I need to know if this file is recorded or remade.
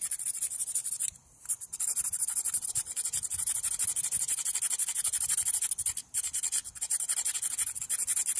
recorded